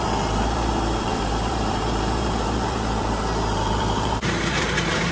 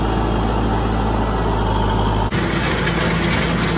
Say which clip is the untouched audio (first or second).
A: second